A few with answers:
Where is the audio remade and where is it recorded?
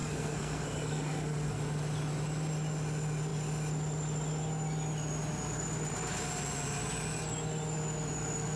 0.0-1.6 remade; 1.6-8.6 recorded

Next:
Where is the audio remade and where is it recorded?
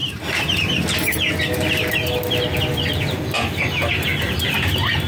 0.0-5.1 recorded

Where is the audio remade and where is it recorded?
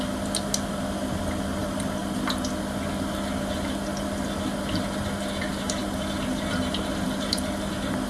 0.0-8.1 recorded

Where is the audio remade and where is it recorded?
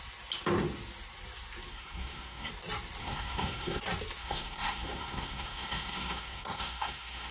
0.0-1.7 recorded; 1.7-2.5 remade; 2.5-3.0 recorded; 3.0-3.8 remade; 3.8-4.2 recorded; 4.2-7.3 remade